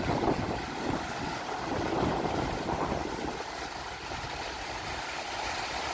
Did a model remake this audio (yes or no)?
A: no